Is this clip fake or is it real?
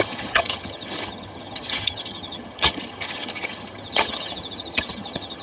fake